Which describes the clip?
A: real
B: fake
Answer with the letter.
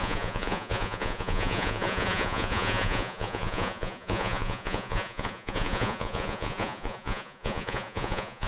B